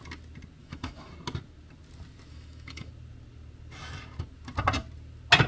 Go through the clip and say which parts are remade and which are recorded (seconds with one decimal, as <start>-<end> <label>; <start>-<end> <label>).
0.0-0.6 recorded; 0.6-1.1 remade; 1.1-2.3 recorded; 2.3-2.9 remade; 2.9-5.5 recorded